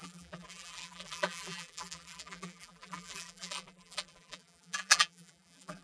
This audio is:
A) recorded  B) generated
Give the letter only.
B